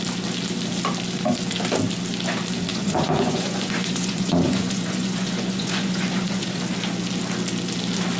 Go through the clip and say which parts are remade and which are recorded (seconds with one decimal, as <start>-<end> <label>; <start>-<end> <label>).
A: 0.0-2.7 recorded; 2.7-6.6 remade; 6.6-8.2 recorded

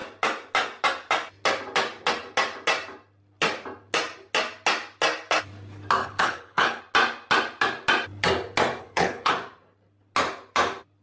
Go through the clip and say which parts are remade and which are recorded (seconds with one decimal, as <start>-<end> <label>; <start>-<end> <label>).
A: 0.0-6.0 recorded; 6.0-6.8 remade; 6.8-8.8 recorded; 8.8-9.3 remade; 9.3-11.0 recorded